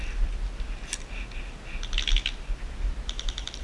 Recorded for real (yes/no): yes